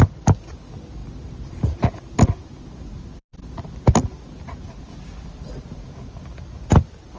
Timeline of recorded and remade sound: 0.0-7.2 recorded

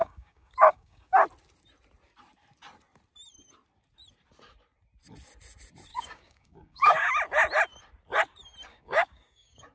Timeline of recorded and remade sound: 0.0-1.1 remade; 1.1-5.9 recorded; 5.9-7.1 remade; 7.1-8.7 recorded; 8.7-9.7 remade

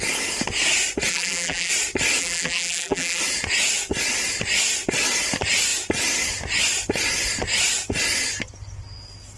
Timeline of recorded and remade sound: 0.0-1.1 recorded; 1.1-1.7 remade; 1.7-2.2 recorded; 2.2-3.2 remade; 3.2-9.4 recorded

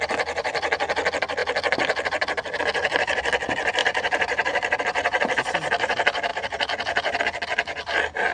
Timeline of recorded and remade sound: 0.0-3.8 recorded; 3.8-4.8 remade; 4.8-8.3 recorded